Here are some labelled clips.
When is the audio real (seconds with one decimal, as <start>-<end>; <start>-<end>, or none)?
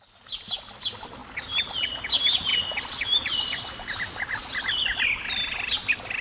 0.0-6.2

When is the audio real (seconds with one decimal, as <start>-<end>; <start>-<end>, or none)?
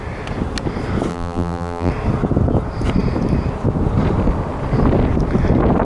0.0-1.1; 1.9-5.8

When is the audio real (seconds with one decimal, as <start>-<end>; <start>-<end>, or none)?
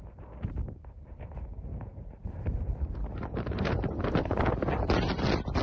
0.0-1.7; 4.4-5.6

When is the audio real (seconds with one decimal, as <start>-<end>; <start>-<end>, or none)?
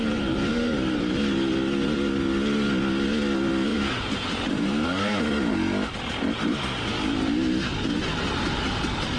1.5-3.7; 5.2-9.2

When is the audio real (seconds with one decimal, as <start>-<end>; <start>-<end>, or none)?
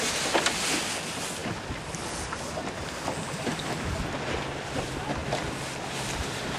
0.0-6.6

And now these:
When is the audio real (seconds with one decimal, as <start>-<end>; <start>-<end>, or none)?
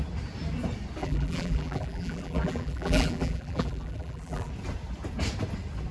0.0-1.0; 4.5-5.9